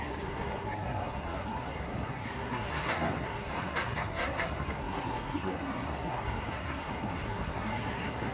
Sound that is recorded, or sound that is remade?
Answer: remade